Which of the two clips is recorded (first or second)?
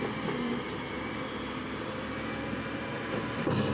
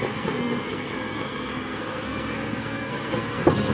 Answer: first